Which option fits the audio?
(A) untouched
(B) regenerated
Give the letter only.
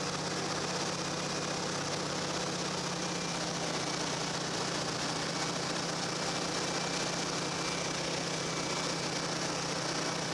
A